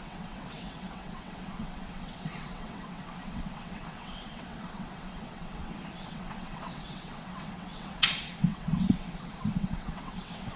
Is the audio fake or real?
fake